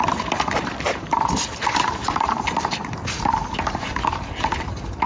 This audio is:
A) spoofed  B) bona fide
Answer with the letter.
A